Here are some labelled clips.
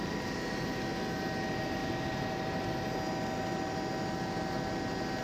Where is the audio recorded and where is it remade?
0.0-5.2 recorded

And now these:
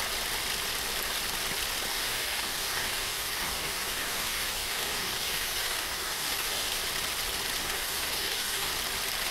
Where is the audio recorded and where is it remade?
0.0-1.9 recorded; 1.9-6.8 remade; 6.8-7.6 recorded; 7.6-8.7 remade; 8.7-9.3 recorded

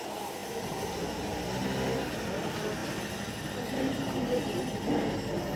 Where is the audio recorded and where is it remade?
0.0-5.6 recorded

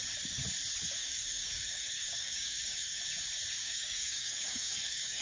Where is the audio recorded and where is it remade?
0.0-1.0 recorded; 1.0-3.0 remade; 3.0-3.6 recorded; 3.6-5.2 remade

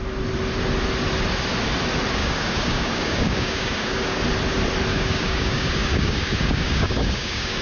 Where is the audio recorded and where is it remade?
0.0-2.2 recorded; 2.2-4.2 remade; 4.2-4.9 recorded; 4.9-7.6 remade

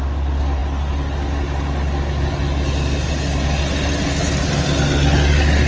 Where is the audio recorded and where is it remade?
0.0-5.7 recorded